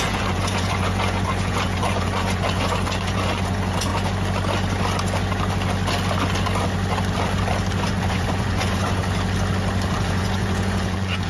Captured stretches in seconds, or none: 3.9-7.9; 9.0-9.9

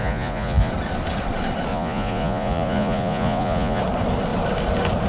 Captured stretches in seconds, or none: 0.7-1.7; 3.8-5.1

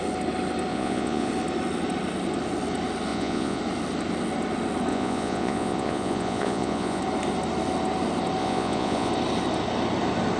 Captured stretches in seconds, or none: 0.0-0.7; 1.3-3.1; 3.6-4.9; 7.0-8.4; 9.1-10.4